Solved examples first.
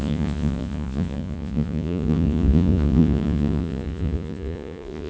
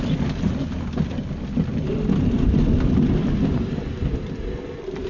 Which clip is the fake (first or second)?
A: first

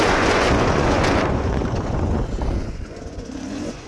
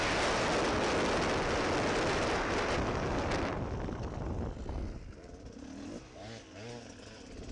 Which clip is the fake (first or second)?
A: first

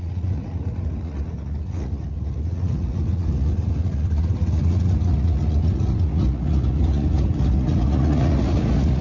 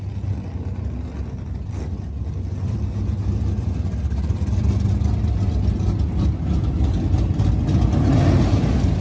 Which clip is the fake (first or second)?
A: first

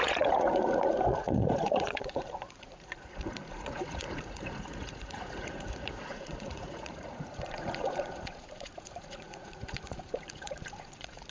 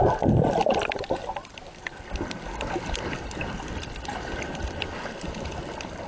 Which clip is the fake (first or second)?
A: first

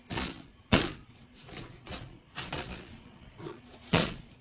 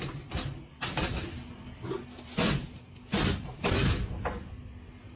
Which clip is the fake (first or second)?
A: first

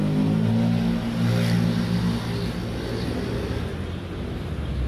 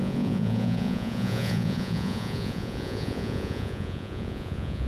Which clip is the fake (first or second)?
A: second